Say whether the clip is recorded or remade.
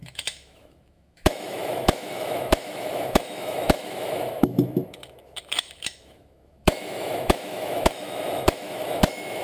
remade